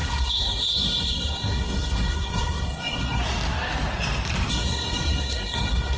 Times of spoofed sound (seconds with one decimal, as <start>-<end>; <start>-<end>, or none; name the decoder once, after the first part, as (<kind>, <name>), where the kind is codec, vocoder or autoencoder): 0.0-3.2 (codec, SNAC); 4.5-6.0